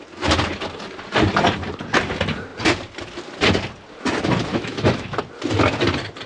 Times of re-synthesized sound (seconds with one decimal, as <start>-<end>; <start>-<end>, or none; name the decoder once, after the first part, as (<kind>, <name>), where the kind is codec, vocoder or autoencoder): 4.5-5.2 (autoencoder, DAC-VAE)

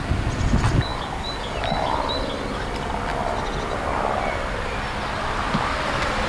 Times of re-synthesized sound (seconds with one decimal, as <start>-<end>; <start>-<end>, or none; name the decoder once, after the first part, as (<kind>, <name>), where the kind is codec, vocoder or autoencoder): none

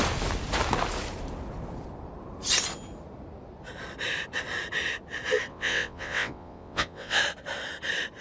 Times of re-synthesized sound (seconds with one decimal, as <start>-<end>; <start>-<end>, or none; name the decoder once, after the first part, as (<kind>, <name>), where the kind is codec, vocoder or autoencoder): 5.5-7.2 (vocoder, WaveNeXt)

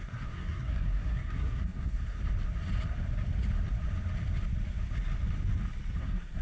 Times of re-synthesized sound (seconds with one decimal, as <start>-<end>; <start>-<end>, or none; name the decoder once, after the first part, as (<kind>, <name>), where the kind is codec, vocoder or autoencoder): 0.0-2.2 (codec, SNAC); 6.0-6.4

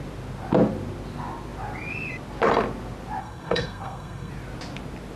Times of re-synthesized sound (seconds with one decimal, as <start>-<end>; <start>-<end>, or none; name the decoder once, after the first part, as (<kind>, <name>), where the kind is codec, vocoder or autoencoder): 3.2-4.3 (codec, SNAC)

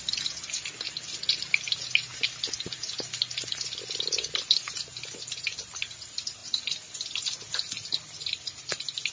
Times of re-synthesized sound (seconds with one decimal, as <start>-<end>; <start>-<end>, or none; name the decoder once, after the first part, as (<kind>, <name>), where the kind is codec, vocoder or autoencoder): none